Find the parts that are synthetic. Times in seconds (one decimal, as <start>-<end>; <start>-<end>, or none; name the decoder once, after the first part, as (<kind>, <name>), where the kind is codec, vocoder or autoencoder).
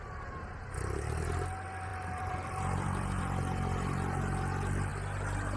1.9-3.2 (vocoder, BigVGAN v2)